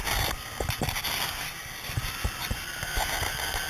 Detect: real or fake real